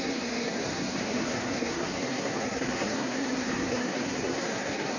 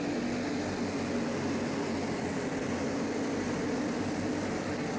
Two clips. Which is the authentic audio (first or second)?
second